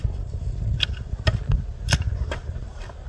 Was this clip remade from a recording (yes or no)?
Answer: no